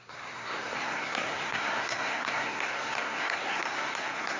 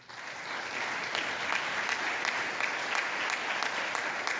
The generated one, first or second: first